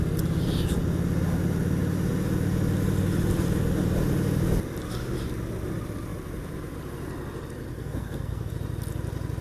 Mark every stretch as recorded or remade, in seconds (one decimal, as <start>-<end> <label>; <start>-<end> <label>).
0.0-7.7 recorded; 7.7-8.5 remade; 8.5-9.4 recorded